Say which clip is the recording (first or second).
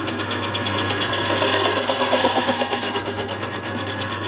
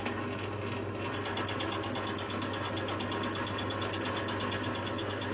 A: second